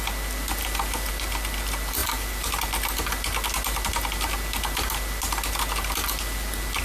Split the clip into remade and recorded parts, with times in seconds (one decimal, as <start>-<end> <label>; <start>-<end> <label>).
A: 0.0-2.0 recorded; 2.0-2.6 remade; 2.6-6.8 recorded